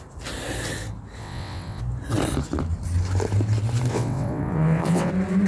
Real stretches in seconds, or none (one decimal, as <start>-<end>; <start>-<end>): 0.0-1.2; 1.8-3.9; 5.1-5.5